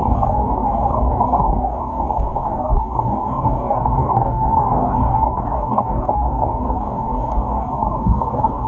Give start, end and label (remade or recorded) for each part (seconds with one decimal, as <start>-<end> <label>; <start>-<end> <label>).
0.0-8.7 remade